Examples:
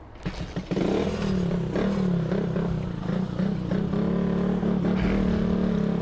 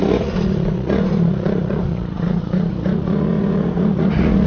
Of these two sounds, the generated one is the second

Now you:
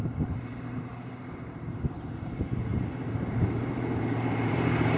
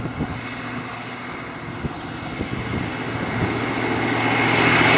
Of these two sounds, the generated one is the first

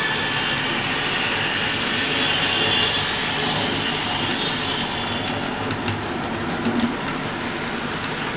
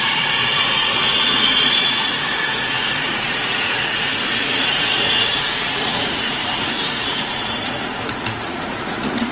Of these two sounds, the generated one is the second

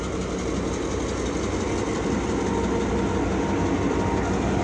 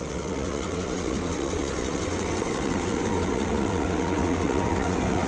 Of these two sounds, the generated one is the second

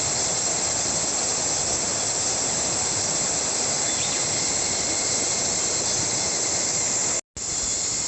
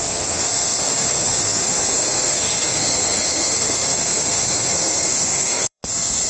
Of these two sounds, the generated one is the second